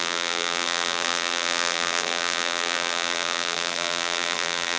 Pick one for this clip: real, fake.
fake